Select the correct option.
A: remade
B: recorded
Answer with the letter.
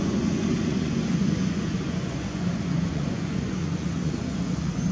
A